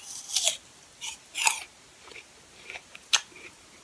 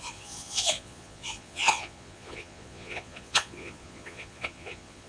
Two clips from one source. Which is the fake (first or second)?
second